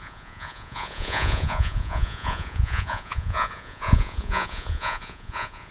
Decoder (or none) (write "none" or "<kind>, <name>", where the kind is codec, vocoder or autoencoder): vocoder, Vocos